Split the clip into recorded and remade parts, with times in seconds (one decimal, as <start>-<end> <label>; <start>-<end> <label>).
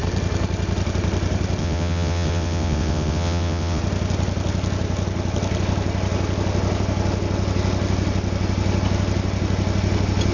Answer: 0.0-1.6 recorded; 1.6-3.8 remade; 3.8-10.3 recorded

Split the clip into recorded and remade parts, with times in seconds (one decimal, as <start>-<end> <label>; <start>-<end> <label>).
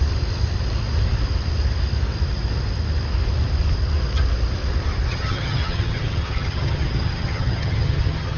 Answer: 0.0-5.1 recorded; 5.1-8.4 remade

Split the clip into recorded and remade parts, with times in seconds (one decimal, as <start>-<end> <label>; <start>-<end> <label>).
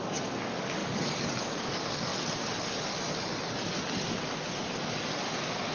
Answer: 0.0-2.1 remade; 2.1-5.7 recorded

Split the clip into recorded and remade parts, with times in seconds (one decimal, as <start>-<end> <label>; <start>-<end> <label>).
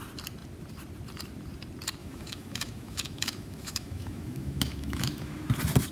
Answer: 0.0-2.0 recorded; 2.0-5.5 remade; 5.5-5.9 recorded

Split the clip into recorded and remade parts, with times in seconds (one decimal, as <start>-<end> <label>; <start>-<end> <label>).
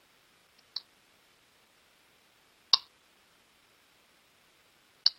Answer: 0.0-5.2 recorded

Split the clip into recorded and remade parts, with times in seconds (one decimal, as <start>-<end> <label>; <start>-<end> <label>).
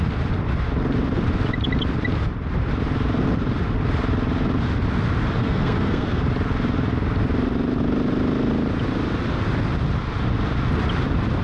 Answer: 0.0-5.4 recorded; 5.4-6.2 remade; 6.2-11.4 recorded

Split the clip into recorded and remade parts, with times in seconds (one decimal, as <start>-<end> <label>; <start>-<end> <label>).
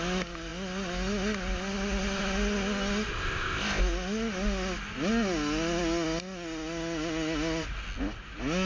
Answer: 0.0-3.1 recorded; 3.1-3.8 remade; 3.8-8.7 recorded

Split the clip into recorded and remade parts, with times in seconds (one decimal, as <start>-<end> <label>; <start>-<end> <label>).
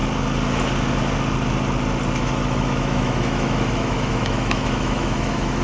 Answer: 0.0-2.2 recorded; 2.2-5.6 remade